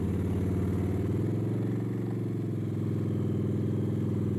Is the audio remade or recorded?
recorded